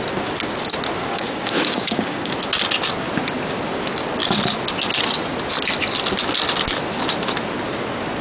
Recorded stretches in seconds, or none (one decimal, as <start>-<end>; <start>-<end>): 0.0-1.0; 2.3-8.2